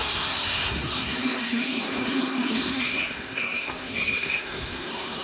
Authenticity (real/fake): fake